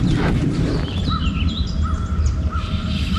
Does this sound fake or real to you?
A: real